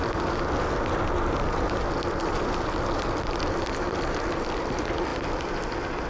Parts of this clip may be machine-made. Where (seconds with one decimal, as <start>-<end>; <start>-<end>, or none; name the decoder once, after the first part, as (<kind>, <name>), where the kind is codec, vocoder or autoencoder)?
none